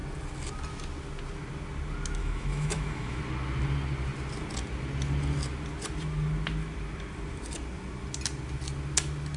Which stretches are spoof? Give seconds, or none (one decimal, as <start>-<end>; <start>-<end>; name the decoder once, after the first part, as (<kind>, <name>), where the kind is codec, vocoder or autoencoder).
2.2-3.2 (autoencoder, DAC-VAE)